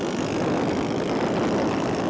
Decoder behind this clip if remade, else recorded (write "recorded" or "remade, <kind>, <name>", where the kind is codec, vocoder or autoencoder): recorded